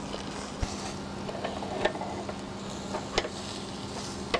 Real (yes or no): yes